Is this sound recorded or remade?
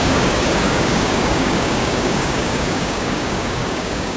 remade